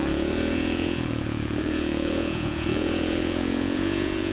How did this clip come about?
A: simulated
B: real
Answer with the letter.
A